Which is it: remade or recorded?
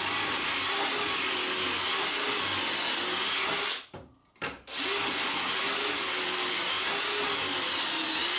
recorded